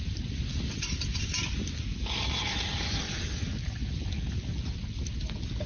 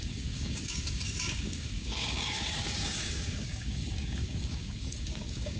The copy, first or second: second